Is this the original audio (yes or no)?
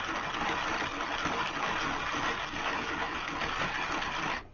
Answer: yes